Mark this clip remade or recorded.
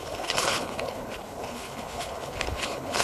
remade